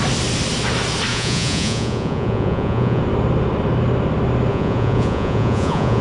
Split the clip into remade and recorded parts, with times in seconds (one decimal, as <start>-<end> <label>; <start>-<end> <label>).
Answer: 0.0-1.1 recorded; 1.1-3.0 remade; 3.0-4.5 recorded; 4.5-6.0 remade